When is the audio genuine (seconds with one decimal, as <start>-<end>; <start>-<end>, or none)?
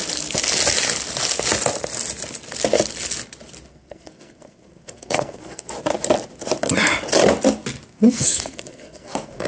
0.0-3.7; 5.7-7.9